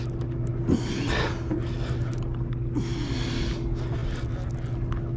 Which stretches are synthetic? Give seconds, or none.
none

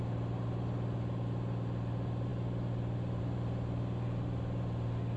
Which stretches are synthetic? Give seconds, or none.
none

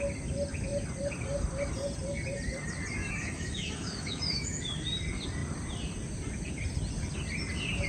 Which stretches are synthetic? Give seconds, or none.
3.0-4.6

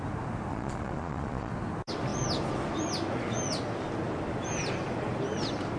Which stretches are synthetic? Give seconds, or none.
0.5-1.5

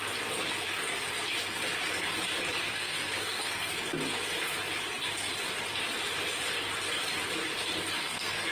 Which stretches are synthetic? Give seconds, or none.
2.6-3.7; 8.0-8.5

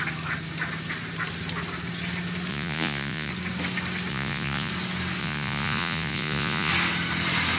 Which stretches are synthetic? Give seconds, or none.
2.5-3.3; 4.1-4.7; 5.2-6.7

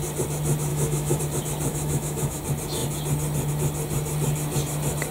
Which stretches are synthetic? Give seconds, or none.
0.7-1.2; 1.7-2.4

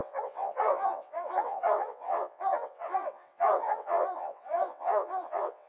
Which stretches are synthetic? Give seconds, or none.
0.0-5.7